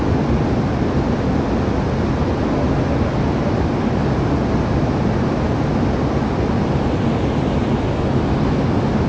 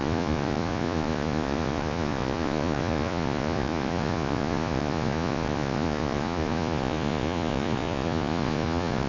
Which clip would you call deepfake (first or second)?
second